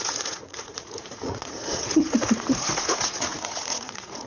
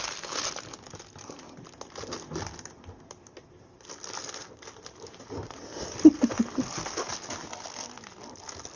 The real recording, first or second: second